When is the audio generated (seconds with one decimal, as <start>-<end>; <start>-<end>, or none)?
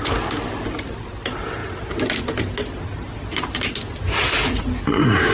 none